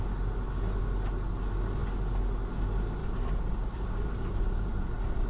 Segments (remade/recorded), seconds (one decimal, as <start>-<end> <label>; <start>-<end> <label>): 0.0-3.0 recorded; 3.0-5.3 remade

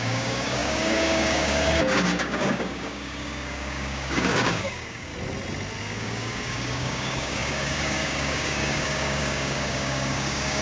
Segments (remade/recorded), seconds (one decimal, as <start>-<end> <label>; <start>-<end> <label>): 0.0-5.1 remade; 5.1-5.8 recorded; 5.8-10.6 remade

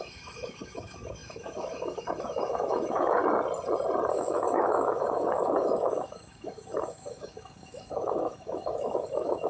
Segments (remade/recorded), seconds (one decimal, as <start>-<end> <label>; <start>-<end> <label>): 0.0-3.2 remade; 3.2-4.1 recorded; 4.1-9.5 remade

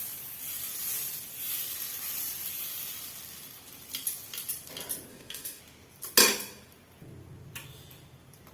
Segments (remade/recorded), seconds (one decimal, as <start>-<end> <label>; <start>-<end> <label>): 0.0-5.1 recorded; 5.1-5.6 remade; 5.6-8.5 recorded

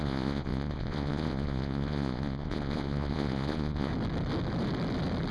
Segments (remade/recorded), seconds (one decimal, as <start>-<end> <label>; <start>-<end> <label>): 0.0-3.9 remade; 3.9-5.3 recorded

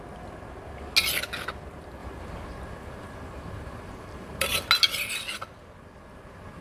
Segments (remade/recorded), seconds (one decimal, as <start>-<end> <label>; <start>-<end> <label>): 0.0-2.0 recorded; 2.0-4.7 remade; 4.7-6.6 recorded

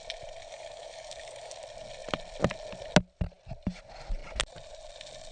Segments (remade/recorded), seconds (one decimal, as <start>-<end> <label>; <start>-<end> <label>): 0.0-0.4 recorded; 0.4-1.6 remade; 1.6-5.3 recorded

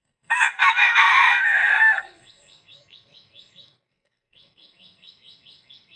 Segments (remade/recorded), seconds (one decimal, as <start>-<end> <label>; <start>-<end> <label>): 0.0-6.0 remade